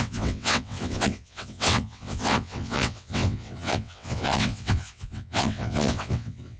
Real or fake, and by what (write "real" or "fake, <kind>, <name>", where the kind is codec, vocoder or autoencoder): fake, vocoder, WaveNeXt